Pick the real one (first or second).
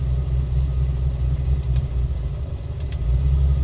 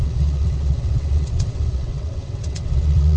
first